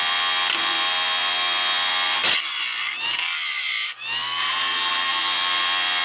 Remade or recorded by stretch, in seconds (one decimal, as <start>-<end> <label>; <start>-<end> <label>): 0.0-6.0 remade